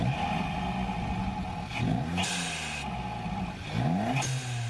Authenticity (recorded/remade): recorded